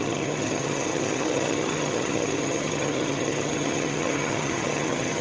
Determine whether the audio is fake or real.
fake